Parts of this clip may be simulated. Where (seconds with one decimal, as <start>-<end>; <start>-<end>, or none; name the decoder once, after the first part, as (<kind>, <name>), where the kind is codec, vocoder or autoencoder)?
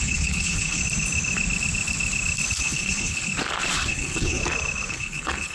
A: 0.0-0.8 (codec, HILCodec); 2.6-3.3; 3.9-4.4; 4.9-5.5